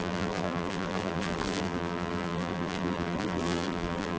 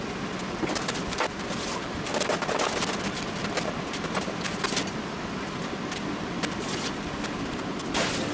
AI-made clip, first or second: first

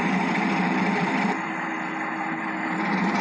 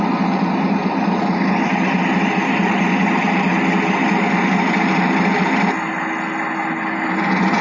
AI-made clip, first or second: first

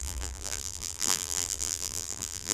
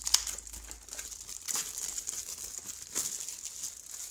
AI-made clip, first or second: first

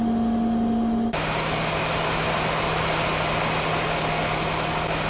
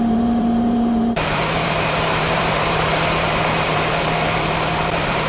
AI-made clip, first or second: second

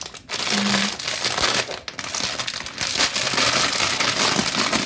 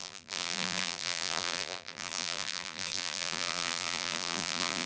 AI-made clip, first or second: second